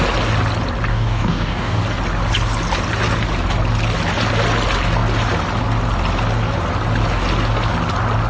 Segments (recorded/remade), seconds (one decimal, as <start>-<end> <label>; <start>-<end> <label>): 0.0-0.9 recorded; 0.9-1.8 remade; 1.8-8.3 recorded